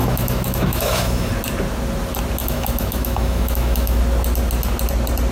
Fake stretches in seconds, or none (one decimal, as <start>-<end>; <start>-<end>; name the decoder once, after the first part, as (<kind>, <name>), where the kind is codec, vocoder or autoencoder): 0.0-1.3 (autoencoder, DAC-VAE); 2.4-4.0

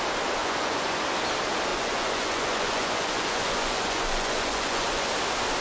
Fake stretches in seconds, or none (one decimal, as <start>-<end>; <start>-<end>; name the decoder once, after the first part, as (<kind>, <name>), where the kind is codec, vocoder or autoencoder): 0.4-1.0 (vocoder, Vocos); 1.7-5.1

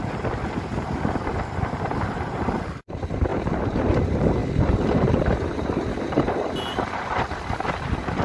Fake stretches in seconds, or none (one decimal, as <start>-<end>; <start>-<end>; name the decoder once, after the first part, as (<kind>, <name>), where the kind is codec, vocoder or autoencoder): 1.9-2.6 (vocoder, BigVGAN v2); 3.3-4.0; 4.4-7.1

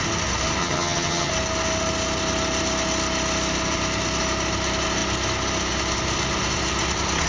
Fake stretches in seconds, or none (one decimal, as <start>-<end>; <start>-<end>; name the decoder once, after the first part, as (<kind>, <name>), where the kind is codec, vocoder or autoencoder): 0.6-1.3 (vocoder, HiFi-GAN)

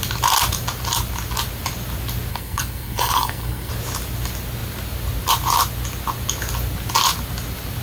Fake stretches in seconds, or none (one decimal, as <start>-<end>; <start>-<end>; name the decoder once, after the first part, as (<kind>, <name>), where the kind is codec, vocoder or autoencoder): 2.3-3.7 (codec, SNAC)

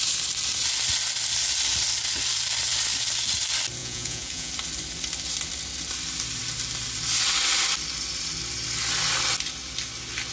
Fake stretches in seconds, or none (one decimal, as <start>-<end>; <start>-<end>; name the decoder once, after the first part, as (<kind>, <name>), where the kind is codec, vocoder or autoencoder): 3.8-4.5 (vocoder, Vocos)